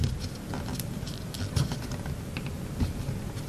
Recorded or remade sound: recorded